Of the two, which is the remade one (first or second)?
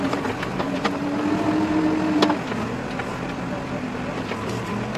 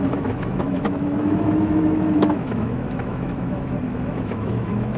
second